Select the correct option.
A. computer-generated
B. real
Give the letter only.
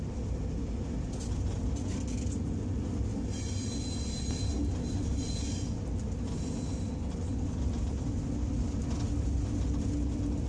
B